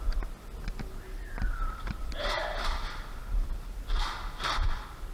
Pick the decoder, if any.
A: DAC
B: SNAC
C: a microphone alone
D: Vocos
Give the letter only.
C